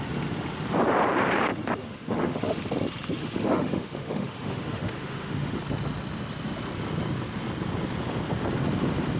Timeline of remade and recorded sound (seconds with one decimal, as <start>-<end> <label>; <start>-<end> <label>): 0.0-1.8 recorded; 1.8-2.6 remade; 2.6-3.2 recorded; 3.2-5.6 remade; 5.6-9.2 recorded